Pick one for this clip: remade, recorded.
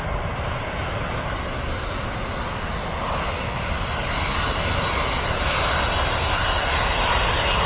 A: recorded